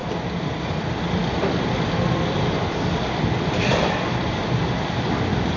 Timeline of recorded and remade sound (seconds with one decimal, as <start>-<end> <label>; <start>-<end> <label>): 0.0-3.4 recorded; 3.4-4.6 remade; 4.6-5.6 recorded